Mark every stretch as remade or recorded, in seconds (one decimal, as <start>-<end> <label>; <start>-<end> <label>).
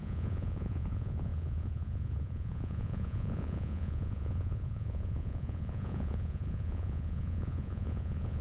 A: 0.0-8.4 remade